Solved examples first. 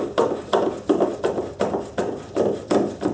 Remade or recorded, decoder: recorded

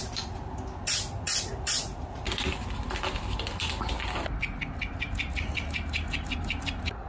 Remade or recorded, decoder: recorded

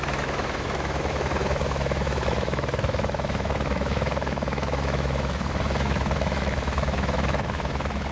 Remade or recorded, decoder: remade, autoencoder, DAC-VAE